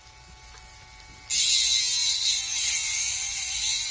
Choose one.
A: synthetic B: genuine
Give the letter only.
B